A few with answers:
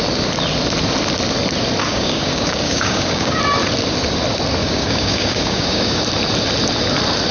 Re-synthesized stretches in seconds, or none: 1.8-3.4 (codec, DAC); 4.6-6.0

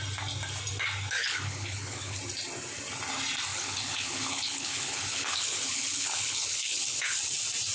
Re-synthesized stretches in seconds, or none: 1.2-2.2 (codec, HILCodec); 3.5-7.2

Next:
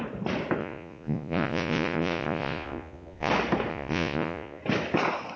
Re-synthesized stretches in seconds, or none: 0.6-3.3 (vocoder, Vocos); 3.7-4.6